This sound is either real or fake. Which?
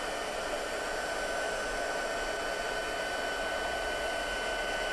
real